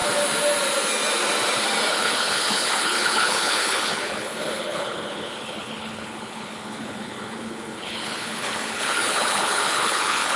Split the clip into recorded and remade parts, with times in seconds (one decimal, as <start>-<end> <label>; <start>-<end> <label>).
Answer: 0.0-1.9 recorded; 1.9-10.4 remade